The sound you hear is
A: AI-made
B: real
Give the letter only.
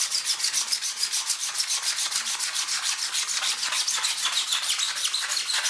B